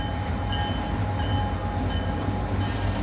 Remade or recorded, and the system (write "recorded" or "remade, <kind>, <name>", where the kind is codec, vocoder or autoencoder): recorded